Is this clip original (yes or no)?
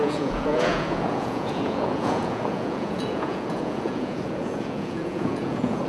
no